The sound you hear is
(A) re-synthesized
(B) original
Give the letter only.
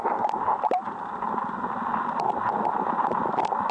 B